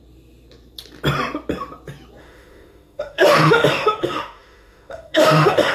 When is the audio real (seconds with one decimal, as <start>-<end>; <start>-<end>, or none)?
0.0-2.2